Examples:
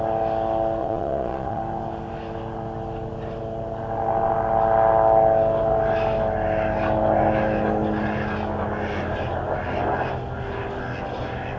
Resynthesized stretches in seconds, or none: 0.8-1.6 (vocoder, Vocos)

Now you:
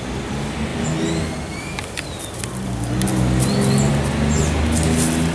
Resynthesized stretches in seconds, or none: none

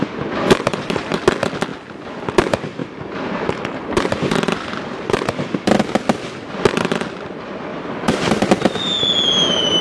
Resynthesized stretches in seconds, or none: 0.7-1.2 (vocoder, BigVGAN v2); 2.8-5.7; 7.7-8.5

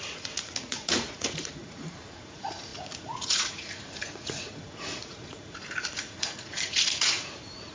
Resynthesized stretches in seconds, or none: 0.0-7.7 (vocoder, Vocos)

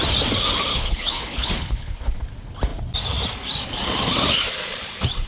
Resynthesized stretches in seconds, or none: 0.7-2.2 (codec, HILCodec)

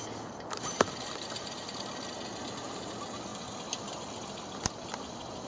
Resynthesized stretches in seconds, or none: none

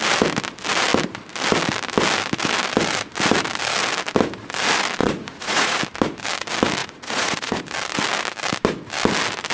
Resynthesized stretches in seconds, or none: 5.0-5.8 (vocoder, Vocos); 6.8-7.6